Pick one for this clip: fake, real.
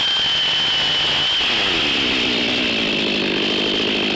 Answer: real